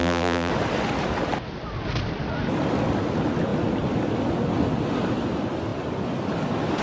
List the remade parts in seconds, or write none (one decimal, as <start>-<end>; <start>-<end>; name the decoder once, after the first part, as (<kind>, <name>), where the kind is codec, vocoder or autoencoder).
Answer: 0.0-0.5 (vocoder, BigVGAN v2)